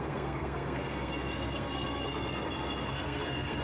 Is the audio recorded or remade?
remade